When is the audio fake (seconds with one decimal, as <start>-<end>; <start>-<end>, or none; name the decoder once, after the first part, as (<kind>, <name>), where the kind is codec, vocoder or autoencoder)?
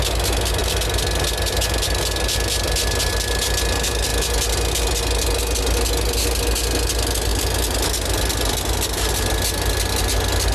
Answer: none